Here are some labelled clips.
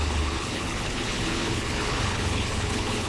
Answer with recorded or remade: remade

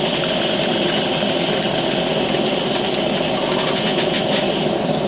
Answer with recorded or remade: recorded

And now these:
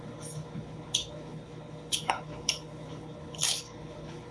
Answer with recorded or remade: remade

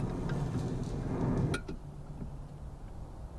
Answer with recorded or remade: recorded